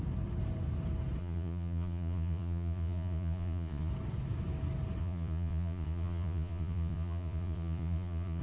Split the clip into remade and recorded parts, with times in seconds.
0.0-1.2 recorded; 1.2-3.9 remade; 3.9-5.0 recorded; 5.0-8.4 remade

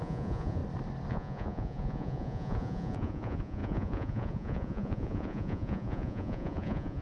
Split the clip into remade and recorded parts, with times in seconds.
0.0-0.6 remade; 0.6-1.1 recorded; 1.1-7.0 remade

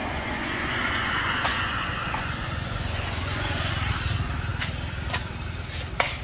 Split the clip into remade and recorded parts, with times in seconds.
0.0-3.7 remade; 3.7-6.2 recorded